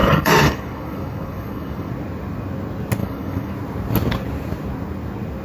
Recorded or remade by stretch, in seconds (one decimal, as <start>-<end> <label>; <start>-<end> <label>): 0.0-1.9 remade; 1.9-3.0 recorded; 3.0-3.5 remade; 3.5-5.4 recorded